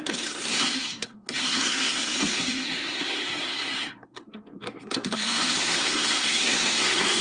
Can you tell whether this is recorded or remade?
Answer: remade